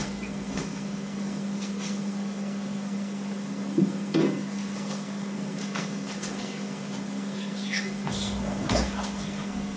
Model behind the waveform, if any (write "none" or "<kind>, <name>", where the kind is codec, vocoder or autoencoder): codec, SNAC